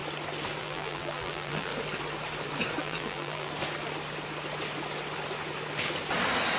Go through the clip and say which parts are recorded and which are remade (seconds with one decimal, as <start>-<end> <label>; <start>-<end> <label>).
0.0-0.6 recorded; 0.6-1.7 remade; 1.7-2.8 recorded; 2.8-3.5 remade; 3.5-6.6 recorded